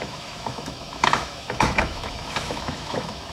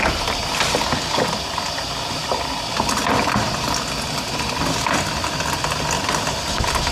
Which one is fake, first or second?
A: first